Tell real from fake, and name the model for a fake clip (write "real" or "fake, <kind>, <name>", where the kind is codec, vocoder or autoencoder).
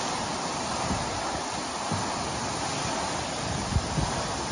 real